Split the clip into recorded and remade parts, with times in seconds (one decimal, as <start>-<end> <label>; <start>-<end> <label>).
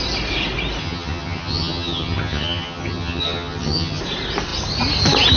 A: 0.0-0.8 recorded; 0.8-4.0 remade; 4.0-5.4 recorded